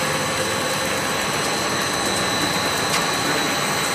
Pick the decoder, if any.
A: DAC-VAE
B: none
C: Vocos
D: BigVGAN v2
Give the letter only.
B